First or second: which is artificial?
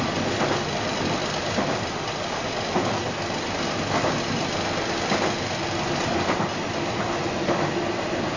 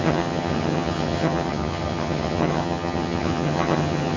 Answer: second